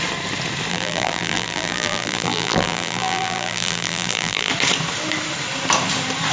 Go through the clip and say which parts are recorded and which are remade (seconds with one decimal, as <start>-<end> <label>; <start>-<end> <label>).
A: 0.0-0.7 recorded; 0.7-4.5 remade; 4.5-6.3 recorded